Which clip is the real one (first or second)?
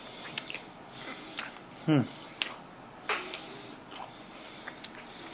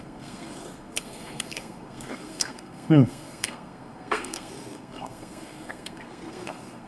first